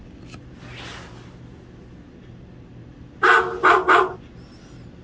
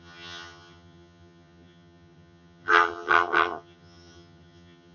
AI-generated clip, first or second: second